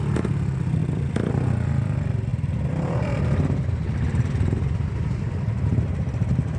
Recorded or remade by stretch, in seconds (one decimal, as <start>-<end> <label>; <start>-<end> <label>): 0.0-0.8 recorded; 0.8-1.3 remade; 1.3-2.3 recorded; 2.3-6.6 remade